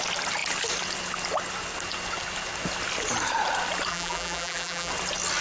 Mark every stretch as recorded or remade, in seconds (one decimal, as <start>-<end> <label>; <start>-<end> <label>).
0.0-3.9 recorded; 3.9-4.9 remade; 4.9-5.4 recorded